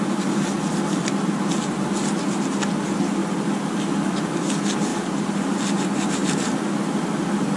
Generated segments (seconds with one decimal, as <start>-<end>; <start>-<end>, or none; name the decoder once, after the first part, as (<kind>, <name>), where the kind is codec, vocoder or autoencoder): 6.2-7.6 (vocoder, BigVGAN v2)

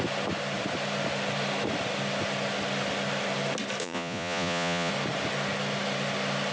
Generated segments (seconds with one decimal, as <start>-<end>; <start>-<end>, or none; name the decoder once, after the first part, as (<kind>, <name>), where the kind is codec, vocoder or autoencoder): 3.8-4.9 (vocoder, Vocos)

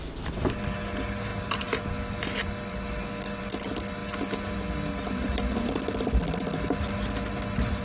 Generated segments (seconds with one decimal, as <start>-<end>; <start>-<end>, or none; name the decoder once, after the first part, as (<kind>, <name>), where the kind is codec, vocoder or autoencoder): none

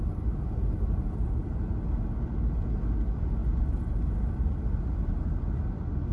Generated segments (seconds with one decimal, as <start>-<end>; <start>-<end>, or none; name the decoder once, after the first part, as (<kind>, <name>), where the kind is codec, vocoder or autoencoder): none

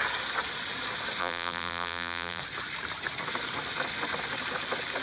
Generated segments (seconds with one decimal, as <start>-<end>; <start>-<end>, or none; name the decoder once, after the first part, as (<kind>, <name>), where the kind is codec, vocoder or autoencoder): 1.2-2.4 (vocoder, BigVGAN v2)

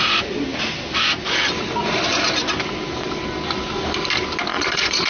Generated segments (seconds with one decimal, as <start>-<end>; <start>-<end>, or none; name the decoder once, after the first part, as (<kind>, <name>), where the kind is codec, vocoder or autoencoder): 4.5-5.1 (vocoder, Vocos)